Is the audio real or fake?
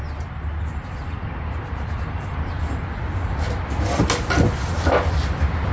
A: real